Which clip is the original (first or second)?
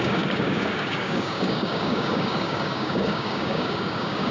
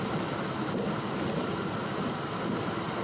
second